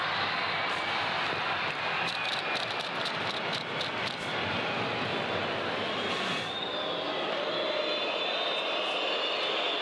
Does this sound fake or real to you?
real